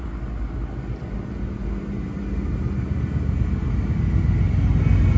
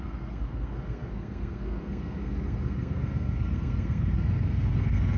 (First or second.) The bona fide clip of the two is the first